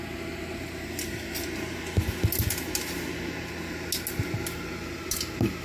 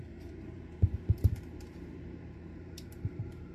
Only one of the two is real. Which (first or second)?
first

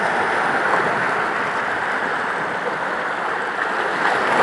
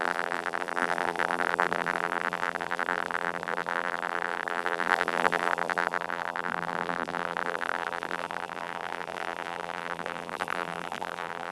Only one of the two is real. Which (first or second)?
first